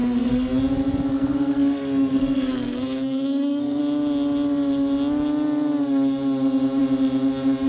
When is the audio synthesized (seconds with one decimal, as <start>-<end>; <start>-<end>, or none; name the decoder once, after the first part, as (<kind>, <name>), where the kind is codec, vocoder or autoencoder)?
0.0-0.6 (codec, SNAC); 1.1-3.8